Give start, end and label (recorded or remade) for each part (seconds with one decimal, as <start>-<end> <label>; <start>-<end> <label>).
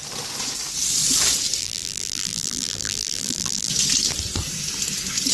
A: 0.0-1.6 recorded; 1.6-3.7 remade; 3.7-5.3 recorded